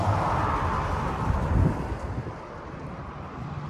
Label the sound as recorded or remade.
remade